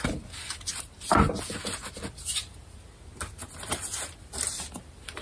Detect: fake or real real